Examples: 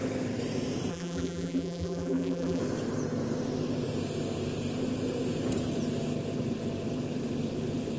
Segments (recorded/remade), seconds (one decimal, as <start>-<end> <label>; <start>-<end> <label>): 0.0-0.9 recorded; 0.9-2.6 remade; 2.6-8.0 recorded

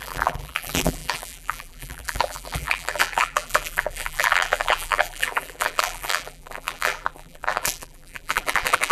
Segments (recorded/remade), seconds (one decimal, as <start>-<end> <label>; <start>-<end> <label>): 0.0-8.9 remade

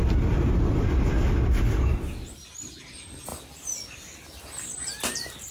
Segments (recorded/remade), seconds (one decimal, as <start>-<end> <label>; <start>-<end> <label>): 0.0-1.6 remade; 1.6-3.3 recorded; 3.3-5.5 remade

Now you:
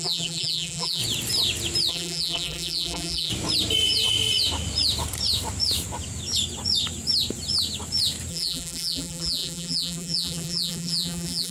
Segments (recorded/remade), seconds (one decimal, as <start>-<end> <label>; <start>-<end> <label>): 0.0-1.0 remade; 1.0-1.9 recorded; 1.9-3.3 remade; 3.3-8.3 recorded; 8.3-11.5 remade

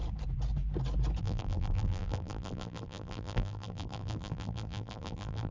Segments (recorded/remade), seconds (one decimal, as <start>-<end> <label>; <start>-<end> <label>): 0.0-1.2 recorded; 1.2-5.5 remade